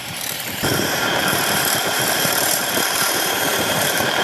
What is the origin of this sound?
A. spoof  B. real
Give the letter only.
A